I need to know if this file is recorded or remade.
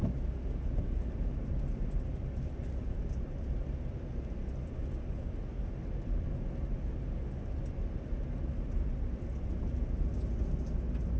recorded